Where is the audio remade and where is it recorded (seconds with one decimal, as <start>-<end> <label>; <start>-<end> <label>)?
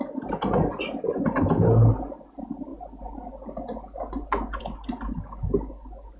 0.0-6.2 recorded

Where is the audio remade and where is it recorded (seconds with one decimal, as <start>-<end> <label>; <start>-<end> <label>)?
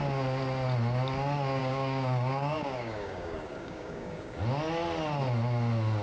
0.0-1.6 recorded; 1.6-4.4 remade; 4.4-6.0 recorded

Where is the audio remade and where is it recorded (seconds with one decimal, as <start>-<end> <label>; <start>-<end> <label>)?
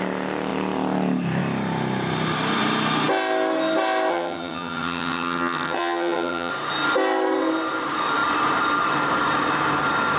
0.0-4.1 recorded; 4.1-6.5 remade; 6.5-10.2 recorded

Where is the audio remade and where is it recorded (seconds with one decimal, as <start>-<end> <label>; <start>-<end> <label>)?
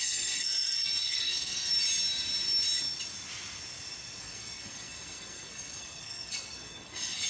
0.0-1.7 remade; 1.7-4.2 recorded; 4.2-7.3 remade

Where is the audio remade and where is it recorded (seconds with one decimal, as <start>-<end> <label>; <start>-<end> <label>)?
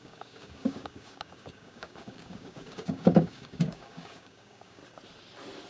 0.0-4.8 remade; 4.8-5.7 recorded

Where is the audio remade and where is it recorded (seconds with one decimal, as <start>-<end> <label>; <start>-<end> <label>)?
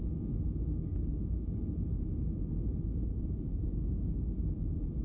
0.0-1.1 recorded; 1.1-1.8 remade; 1.8-2.7 recorded; 2.7-4.2 remade; 4.2-5.0 recorded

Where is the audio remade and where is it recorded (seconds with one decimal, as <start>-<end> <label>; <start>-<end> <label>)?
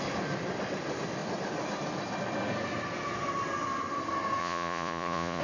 0.0-4.4 recorded; 4.4-5.4 remade